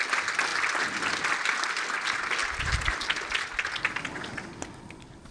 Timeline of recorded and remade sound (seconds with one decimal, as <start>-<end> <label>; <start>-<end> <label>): 0.0-5.3 recorded